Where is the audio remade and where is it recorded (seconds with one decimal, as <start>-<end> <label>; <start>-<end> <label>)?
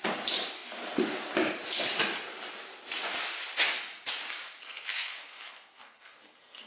0.0-4.6 recorded; 4.6-6.7 remade